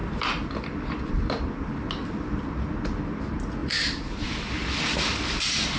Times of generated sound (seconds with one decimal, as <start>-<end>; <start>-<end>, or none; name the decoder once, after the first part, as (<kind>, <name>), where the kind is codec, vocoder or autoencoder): 0.0-1.5 (vocoder, BigVGAN v2); 3.6-4.5